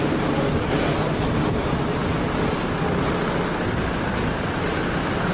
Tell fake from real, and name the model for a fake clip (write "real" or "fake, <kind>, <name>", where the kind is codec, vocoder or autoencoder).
real